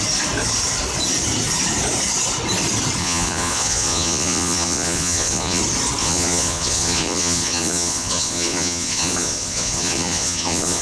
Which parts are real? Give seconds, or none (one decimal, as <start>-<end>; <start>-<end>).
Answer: 0.0-3.0; 5.6-6.0